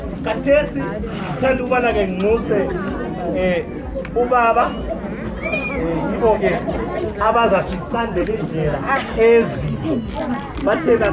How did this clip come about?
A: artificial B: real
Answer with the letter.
B